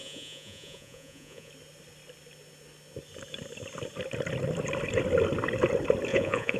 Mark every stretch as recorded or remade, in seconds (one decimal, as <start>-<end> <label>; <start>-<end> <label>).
0.0-1.5 remade; 1.5-6.1 recorded; 6.1-6.6 remade